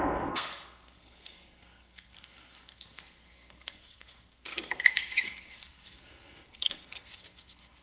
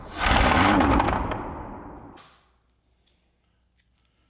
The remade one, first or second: first